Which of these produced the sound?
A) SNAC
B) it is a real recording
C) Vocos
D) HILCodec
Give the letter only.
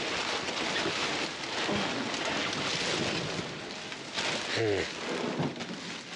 B